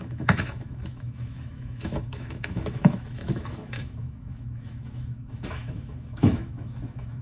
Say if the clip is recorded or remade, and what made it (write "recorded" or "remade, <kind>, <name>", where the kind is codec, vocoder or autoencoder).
remade, autoencoder, DAC-VAE